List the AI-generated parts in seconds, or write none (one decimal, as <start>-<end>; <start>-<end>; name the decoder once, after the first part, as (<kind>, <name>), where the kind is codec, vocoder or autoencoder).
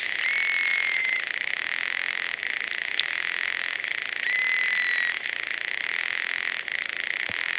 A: 0.7-1.2 (vocoder, Vocos)